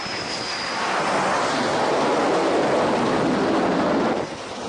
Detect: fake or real real